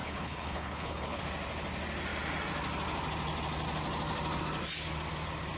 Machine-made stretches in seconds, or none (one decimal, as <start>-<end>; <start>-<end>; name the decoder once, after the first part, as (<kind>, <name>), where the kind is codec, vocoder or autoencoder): 0.0-1.2 (codec, HILCodec)